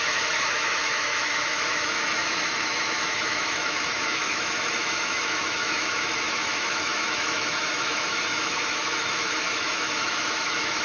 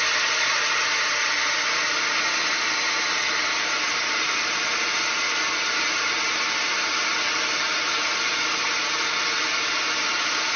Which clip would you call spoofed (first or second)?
first